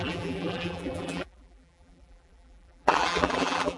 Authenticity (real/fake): fake